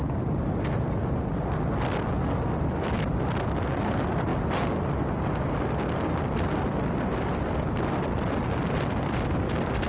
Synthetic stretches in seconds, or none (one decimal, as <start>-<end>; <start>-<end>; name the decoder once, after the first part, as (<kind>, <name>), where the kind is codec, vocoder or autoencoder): none